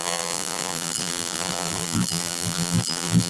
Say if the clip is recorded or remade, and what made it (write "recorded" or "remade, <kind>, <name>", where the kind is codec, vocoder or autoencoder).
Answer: remade, vocoder, BigVGAN v2